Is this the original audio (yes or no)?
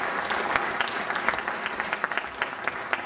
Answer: yes